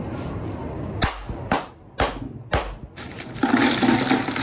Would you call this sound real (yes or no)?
yes